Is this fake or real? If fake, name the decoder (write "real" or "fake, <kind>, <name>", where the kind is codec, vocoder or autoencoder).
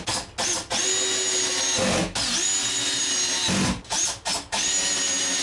real